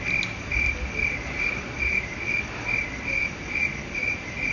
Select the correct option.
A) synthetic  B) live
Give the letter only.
B